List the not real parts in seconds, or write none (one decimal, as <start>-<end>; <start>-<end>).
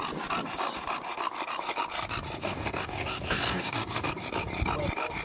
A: 2.4-4.1